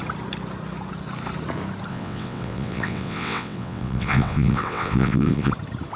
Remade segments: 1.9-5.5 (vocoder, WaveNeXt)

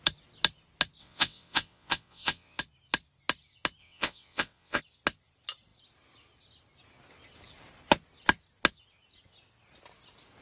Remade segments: 1.0-2.6 (vocoder, WaveNeXt); 3.8-4.8

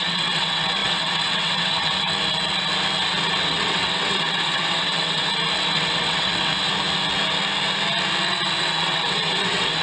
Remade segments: 0.0-2.1 (vocoder, WaveNeXt); 3.5-5.2; 5.7-6.5; 8.6-9.8